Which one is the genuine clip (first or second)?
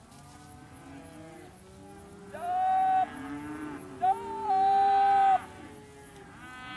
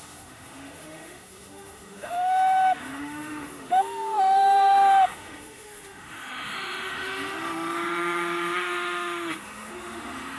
first